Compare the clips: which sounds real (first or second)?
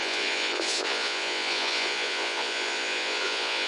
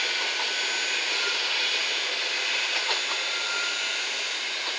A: second